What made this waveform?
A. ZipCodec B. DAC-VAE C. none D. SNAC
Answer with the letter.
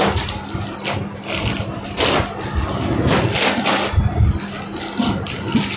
C